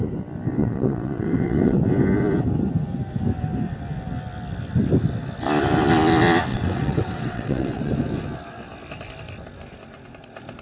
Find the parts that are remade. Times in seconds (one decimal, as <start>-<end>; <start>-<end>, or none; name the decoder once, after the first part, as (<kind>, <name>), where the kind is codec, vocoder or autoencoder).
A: 0.6-1.8 (vocoder, WaveNeXt); 6.5-7.9